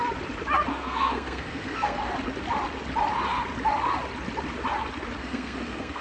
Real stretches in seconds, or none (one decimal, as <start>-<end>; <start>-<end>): 0.0-0.7; 2.0-5.2